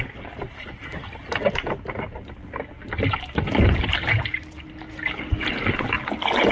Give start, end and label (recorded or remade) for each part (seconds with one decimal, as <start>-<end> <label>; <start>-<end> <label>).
0.0-3.9 recorded; 3.9-4.8 remade; 4.8-6.5 recorded